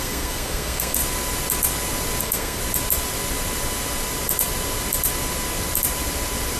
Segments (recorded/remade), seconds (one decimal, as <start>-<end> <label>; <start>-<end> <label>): 0.0-1.0 remade; 1.0-2.2 recorded; 2.2-2.6 remade; 2.6-6.6 recorded